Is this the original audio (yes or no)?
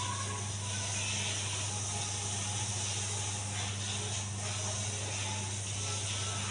yes